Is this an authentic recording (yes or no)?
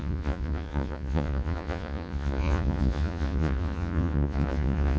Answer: no